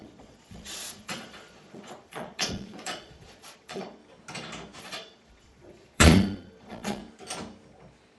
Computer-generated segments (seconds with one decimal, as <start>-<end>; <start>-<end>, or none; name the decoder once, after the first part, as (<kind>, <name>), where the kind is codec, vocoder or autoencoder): 0.0-4.0 (vocoder, Vocos); 4.8-7.0